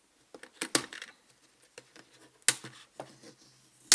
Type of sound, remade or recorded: recorded